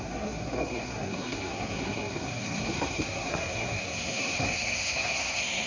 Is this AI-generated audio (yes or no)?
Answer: yes